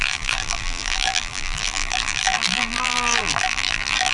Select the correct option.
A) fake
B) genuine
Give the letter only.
A